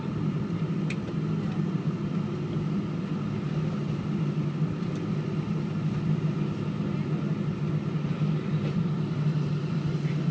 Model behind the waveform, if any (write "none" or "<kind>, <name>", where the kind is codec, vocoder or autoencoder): none